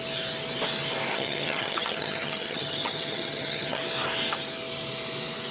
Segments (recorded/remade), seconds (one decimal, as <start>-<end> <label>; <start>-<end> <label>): 0.0-1.1 recorded; 1.1-3.8 remade; 3.8-5.5 recorded